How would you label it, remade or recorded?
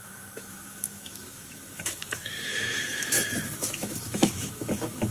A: remade